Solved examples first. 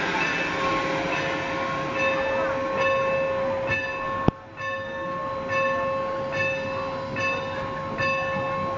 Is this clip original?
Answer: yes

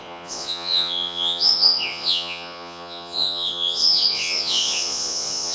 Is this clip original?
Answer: no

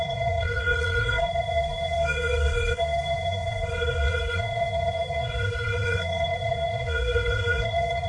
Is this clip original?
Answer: no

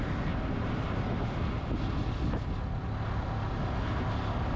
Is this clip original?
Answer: yes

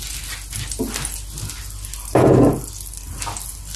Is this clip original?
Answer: yes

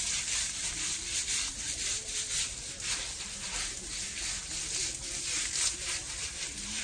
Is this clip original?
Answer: yes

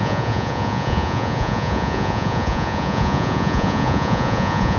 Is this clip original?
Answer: no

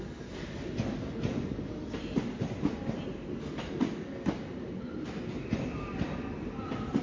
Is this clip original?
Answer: yes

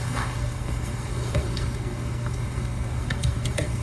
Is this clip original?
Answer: no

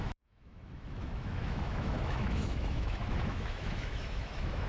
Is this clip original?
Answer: no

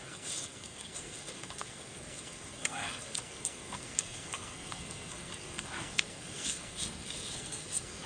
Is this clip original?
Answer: no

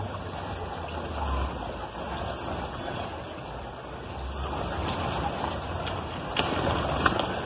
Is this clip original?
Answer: yes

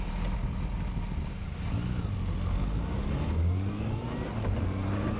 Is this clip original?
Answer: yes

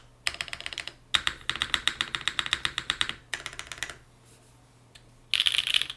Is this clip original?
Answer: yes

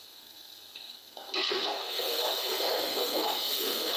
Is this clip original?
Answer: no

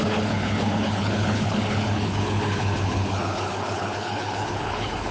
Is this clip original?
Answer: no